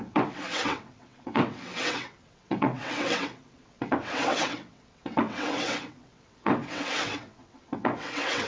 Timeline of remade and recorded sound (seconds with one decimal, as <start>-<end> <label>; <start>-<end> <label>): 0.0-8.5 remade